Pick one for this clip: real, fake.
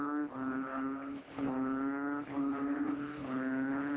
fake